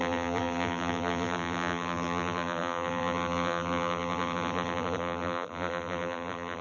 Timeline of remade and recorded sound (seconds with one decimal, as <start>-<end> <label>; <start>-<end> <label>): 0.0-6.6 remade